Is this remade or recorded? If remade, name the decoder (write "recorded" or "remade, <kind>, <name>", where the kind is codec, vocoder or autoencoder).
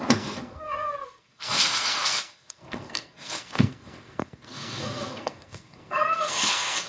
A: remade, codec, SNAC